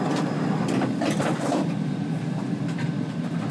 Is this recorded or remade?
remade